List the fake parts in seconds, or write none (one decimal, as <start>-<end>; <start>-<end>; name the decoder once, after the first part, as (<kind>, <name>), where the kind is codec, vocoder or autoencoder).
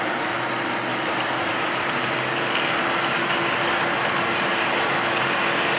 none